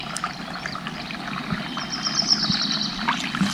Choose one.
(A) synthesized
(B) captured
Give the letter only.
B